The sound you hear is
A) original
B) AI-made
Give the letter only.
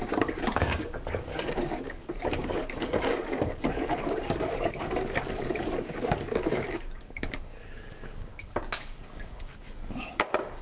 B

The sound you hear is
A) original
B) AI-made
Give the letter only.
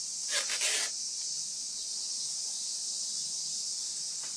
A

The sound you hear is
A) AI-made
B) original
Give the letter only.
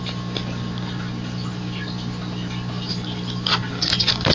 B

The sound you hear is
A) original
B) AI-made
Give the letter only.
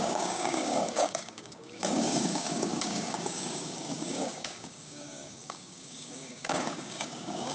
B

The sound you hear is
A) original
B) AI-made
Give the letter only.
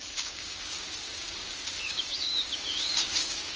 B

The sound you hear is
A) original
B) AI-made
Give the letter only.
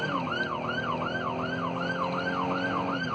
A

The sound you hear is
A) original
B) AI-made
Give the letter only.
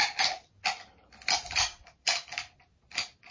A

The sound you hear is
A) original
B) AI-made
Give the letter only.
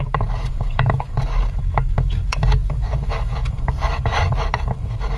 B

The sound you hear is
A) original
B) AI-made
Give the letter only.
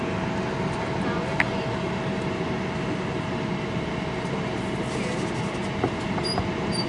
A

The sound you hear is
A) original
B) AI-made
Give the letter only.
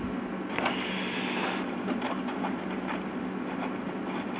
A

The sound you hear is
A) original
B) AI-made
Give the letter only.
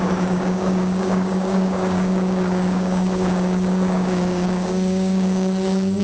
B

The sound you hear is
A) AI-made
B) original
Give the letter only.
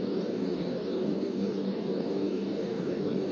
A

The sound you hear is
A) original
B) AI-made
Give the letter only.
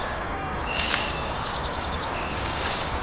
B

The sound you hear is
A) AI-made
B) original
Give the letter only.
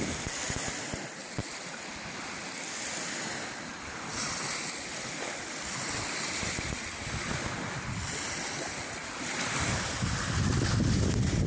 B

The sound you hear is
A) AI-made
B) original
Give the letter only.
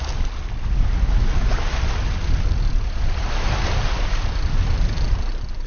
B